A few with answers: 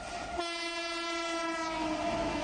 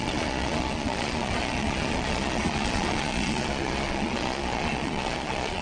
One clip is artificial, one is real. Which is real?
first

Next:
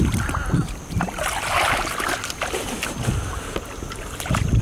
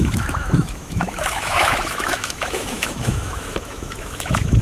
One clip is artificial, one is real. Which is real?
first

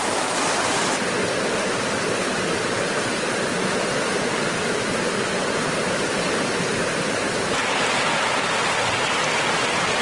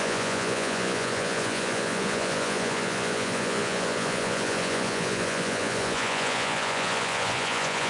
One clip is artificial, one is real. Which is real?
first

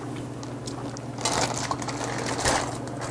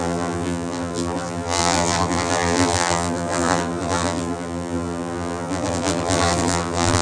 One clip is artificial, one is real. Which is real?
first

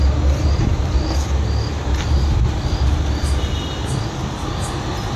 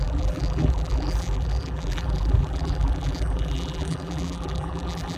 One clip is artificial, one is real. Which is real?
first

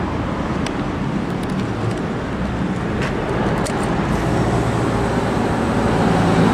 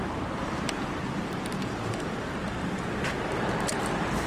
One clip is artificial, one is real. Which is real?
first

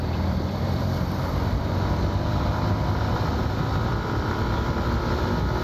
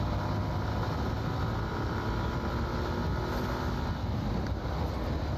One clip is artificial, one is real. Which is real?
second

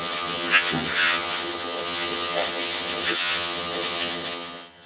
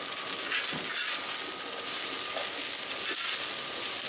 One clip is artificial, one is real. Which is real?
second